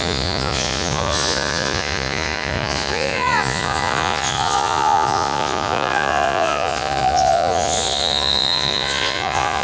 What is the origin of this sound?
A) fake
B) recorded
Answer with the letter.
A